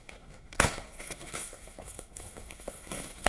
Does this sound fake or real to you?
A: fake